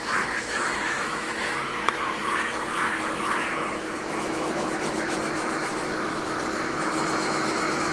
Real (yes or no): no